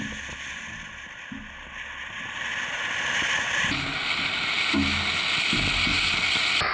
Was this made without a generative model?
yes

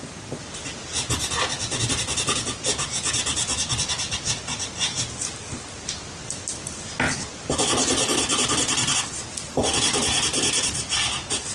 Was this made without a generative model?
yes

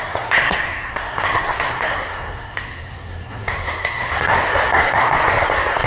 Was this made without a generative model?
no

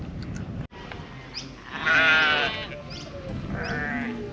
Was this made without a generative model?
yes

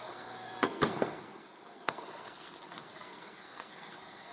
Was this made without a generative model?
no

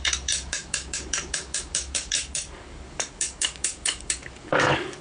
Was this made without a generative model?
no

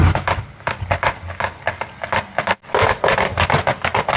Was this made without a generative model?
yes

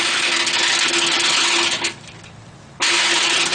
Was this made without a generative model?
yes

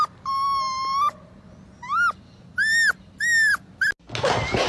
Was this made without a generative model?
yes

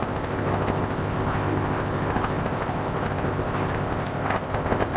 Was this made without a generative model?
no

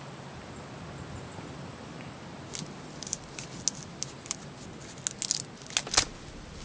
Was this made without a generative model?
yes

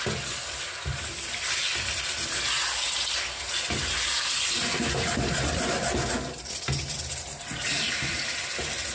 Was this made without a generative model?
yes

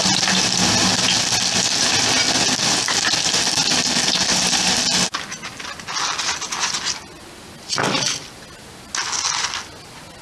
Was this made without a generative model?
yes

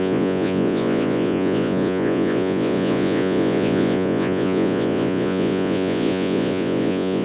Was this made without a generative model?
no